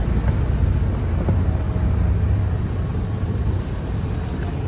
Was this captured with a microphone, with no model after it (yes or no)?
yes